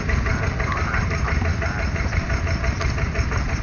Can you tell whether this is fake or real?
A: real